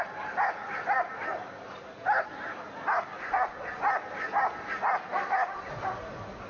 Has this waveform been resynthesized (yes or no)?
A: no